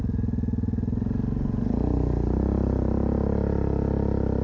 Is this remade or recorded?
recorded